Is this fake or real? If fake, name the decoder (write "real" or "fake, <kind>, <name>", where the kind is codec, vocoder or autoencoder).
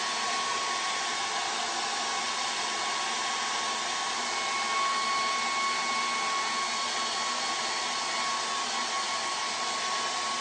real